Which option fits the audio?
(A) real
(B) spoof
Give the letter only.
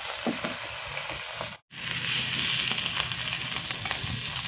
A